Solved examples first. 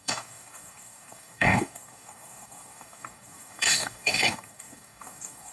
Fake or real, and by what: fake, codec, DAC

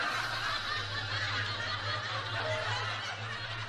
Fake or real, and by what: real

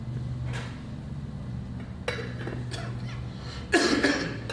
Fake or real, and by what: real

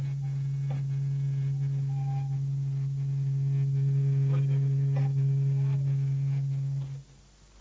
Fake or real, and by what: real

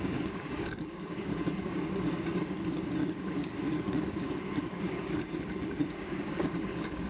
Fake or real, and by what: fake, codec, DAC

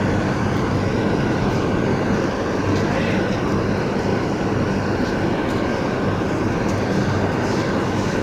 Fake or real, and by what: real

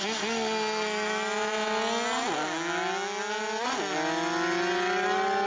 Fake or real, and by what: real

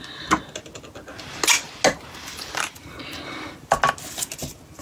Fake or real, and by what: real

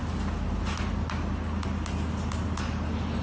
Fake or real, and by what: real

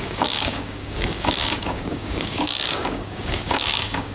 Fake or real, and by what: fake, codec, DAC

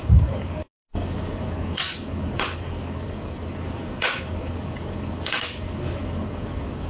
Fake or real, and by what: fake, codec, DAC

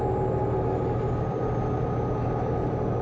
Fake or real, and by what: real